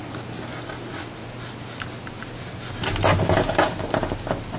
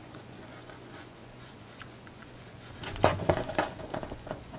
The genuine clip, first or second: first